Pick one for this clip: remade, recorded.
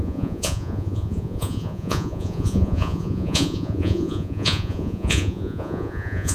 remade